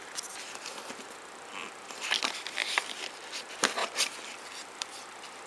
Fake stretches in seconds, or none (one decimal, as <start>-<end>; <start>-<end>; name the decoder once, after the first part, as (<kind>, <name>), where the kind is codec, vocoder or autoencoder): 2.6-3.4 (vocoder, BigVGAN v2); 3.8-4.8

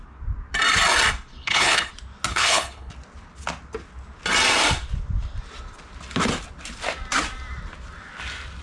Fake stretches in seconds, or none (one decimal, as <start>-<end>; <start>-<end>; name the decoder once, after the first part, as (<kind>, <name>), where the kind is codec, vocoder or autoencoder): 1.3-1.9 (codec, HILCodec); 2.3-2.9

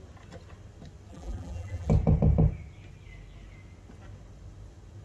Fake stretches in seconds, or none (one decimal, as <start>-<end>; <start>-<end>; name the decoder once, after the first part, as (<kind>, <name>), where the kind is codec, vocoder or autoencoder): 1.1-1.9 (vocoder, BigVGAN v2)

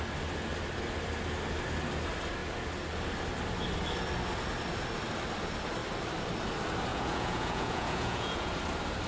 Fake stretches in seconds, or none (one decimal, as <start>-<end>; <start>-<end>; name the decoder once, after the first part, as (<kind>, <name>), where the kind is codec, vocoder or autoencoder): 6.9-8.5 (vocoder, Vocos)

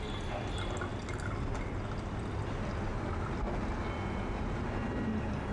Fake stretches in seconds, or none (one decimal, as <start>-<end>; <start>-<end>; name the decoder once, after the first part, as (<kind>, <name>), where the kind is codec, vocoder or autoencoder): none

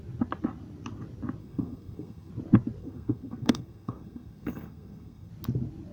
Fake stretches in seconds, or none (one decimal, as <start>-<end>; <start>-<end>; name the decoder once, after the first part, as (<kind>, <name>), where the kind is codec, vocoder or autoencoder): 1.4-2.3 (codec, SNAC); 2.8-5.3

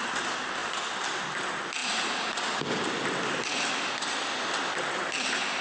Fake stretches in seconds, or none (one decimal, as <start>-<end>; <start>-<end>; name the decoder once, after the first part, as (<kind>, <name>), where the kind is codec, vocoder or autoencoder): none